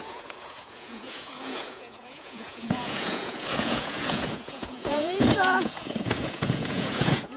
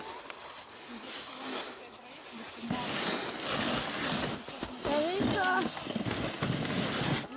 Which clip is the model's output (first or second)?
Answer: first